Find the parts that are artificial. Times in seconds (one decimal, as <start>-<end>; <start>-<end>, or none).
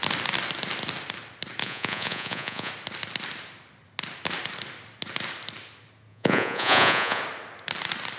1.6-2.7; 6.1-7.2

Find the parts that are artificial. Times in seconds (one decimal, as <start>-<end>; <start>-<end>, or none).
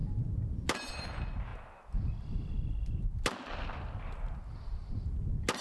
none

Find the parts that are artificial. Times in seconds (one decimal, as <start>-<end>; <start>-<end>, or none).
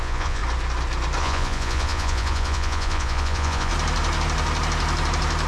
0.0-0.4; 1.2-3.7